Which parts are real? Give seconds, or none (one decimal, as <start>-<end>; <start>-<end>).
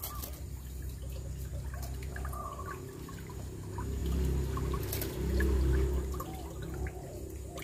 0.0-2.1; 2.7-7.6